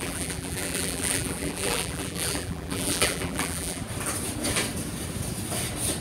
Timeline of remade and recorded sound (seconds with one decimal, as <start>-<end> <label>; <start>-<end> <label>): 0.0-3.8 remade; 3.8-6.0 recorded